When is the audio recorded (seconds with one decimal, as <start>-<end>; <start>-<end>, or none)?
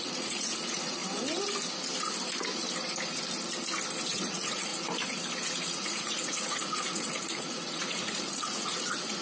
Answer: 1.0-4.1; 4.7-5.5